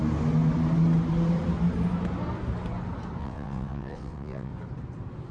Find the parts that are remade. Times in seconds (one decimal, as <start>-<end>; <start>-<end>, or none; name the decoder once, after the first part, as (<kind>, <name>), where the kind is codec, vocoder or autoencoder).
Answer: 3.2-4.5 (vocoder, WaveNeXt)